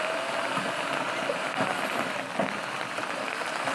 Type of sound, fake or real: real